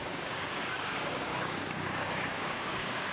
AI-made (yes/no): yes